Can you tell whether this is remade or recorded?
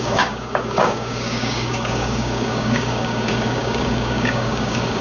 remade